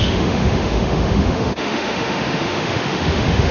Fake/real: fake